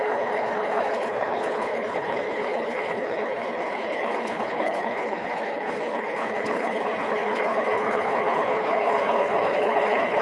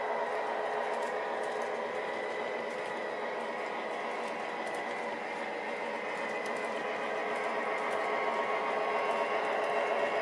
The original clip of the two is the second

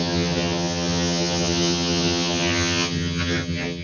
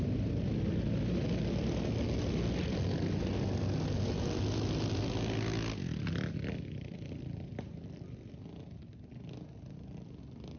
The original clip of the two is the second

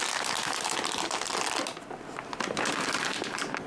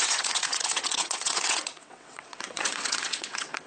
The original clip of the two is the first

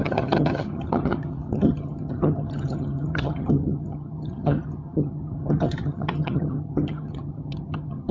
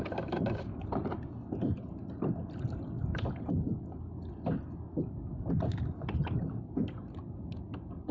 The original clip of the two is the second